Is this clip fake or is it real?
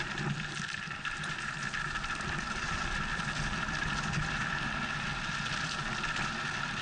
real